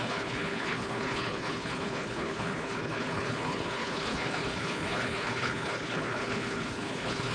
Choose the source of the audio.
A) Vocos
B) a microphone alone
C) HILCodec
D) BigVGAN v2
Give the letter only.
C